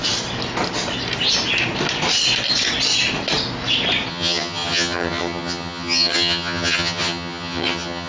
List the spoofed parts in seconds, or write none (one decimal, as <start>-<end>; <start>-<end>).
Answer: 4.1-8.1